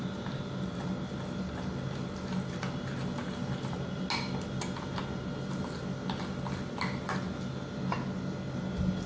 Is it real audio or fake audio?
real